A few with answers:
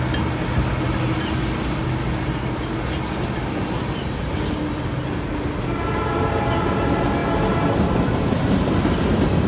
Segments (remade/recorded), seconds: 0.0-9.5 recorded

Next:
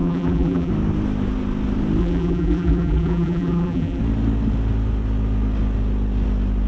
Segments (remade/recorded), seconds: 0.0-0.7 remade; 0.7-2.0 recorded; 2.0-4.0 remade; 4.0-6.7 recorded